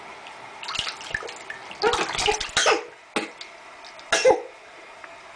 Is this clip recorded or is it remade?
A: recorded